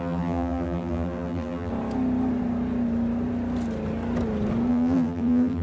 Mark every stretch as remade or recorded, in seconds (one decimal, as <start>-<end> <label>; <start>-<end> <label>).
0.0-1.7 remade; 1.7-4.7 recorded; 4.7-5.6 remade